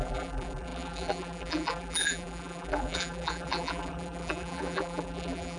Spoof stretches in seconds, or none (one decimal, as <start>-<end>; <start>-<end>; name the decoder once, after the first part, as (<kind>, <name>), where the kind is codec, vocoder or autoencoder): 0.0-5.6 (vocoder, BigVGAN v2)